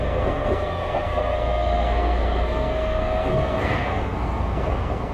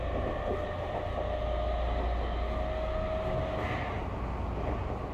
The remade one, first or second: first